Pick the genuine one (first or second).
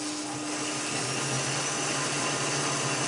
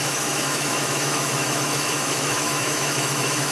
first